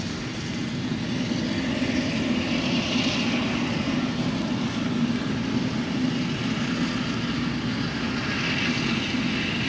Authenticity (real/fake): real